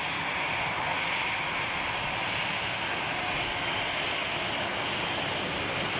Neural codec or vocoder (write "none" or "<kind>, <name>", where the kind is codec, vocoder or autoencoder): none